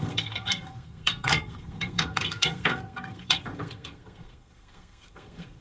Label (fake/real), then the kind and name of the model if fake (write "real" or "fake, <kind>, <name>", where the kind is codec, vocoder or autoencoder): fake, codec, SNAC